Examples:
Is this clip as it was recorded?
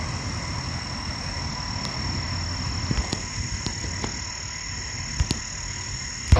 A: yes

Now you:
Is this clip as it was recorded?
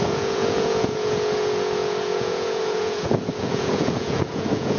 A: no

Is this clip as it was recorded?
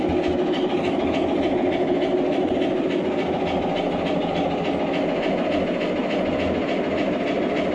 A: yes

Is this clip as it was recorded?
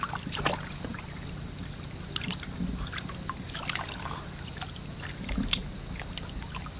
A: yes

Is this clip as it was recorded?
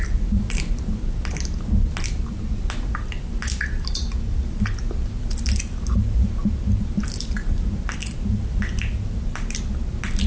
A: yes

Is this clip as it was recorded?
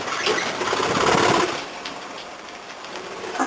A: yes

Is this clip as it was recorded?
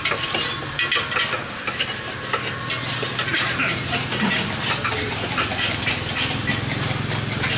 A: yes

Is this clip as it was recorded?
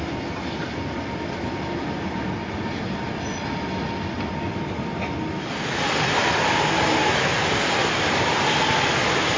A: yes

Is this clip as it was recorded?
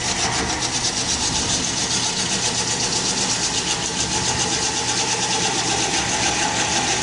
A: yes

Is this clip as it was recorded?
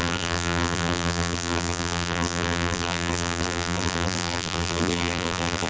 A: no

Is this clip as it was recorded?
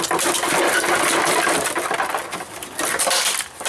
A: yes